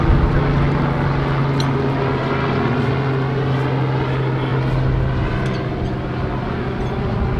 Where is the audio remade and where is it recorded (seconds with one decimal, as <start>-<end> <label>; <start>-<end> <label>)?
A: 0.0-7.4 recorded